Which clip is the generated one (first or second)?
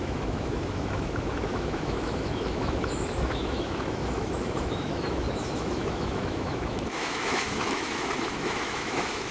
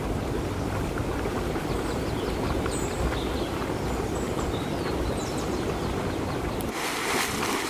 first